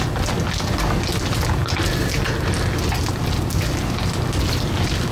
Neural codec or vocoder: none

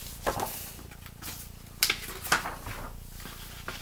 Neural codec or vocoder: none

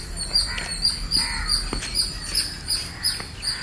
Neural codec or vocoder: none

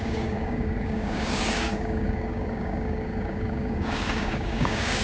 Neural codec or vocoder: codec, DAC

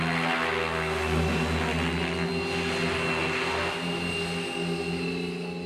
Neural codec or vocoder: none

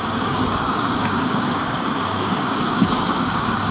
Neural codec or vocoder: codec, DAC